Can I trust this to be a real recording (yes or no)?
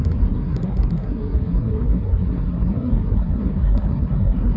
no